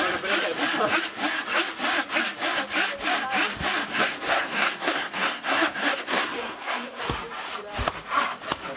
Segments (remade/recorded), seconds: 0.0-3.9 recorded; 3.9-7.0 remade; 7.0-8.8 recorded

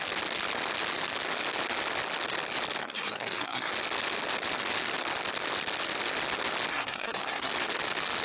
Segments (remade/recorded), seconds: 0.0-2.8 recorded; 2.8-3.7 remade; 3.7-6.7 recorded; 6.7-7.5 remade; 7.5-8.2 recorded

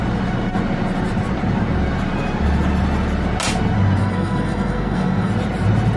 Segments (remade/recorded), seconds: 0.0-4.0 recorded; 4.0-5.3 remade; 5.3-6.0 recorded

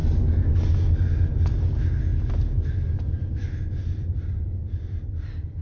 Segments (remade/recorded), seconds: 0.0-5.6 recorded

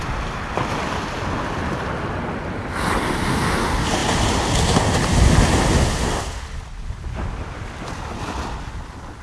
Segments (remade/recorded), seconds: 0.0-9.2 recorded